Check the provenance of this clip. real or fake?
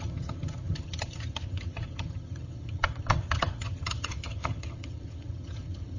fake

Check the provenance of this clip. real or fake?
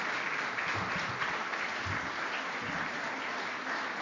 real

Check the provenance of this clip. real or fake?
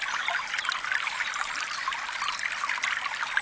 real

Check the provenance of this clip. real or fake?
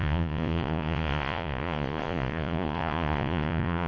fake